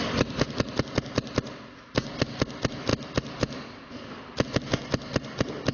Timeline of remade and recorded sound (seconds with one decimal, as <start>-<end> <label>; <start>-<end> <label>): 0.0-5.7 recorded